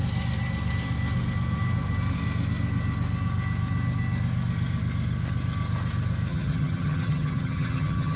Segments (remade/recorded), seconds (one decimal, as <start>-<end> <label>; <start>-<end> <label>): 0.0-6.3 recorded; 6.3-8.2 remade